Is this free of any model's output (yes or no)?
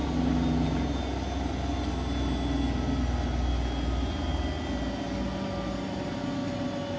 yes